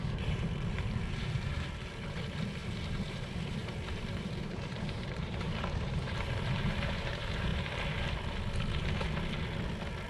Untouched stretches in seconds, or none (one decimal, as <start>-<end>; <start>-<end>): 7.5-10.1